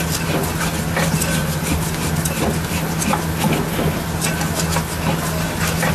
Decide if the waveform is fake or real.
real